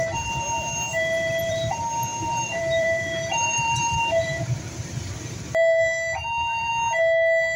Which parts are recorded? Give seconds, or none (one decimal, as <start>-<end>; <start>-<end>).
0.0-0.9; 1.7-2.1; 6.7-7.6